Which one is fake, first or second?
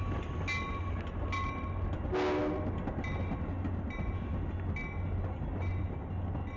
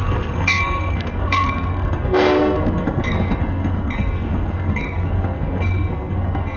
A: second